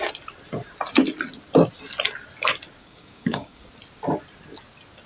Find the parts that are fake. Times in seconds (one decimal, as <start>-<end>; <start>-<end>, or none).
2.8-3.7